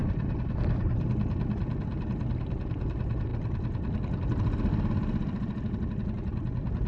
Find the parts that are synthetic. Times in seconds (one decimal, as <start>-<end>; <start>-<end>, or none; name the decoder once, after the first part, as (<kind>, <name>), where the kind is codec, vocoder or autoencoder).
none